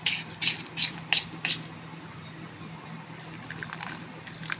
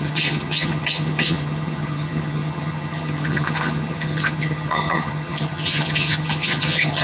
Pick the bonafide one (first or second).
first